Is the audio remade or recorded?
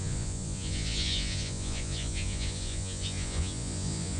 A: remade